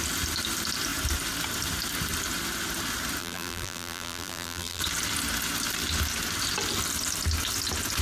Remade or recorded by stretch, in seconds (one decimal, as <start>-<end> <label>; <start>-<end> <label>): 0.0-3.2 recorded; 3.2-4.8 remade; 4.8-8.0 recorded